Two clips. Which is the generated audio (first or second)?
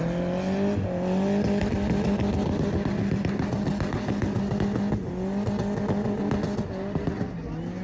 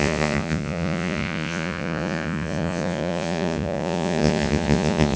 second